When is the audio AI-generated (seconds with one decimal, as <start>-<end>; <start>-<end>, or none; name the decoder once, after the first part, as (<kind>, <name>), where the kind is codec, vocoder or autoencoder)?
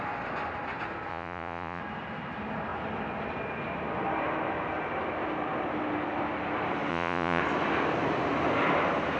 1.1-1.8 (vocoder, Vocos); 6.9-7.4